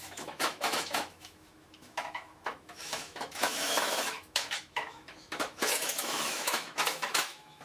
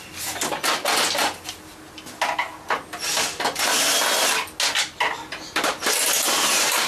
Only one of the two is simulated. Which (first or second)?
first